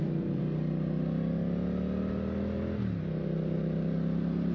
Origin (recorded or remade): recorded